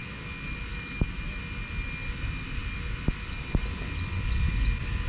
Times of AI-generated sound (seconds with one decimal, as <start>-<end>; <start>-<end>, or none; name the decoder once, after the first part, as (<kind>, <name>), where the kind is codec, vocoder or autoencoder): 0.7-1.4 (autoencoder, DAC-VAE)